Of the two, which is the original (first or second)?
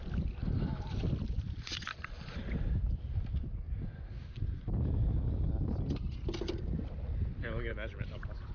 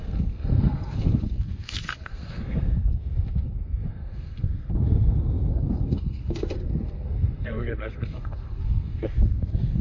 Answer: first